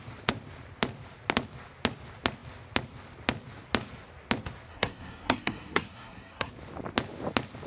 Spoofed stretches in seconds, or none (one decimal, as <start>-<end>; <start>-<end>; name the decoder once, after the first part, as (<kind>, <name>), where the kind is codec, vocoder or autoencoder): 4.7-6.5 (codec, SNAC)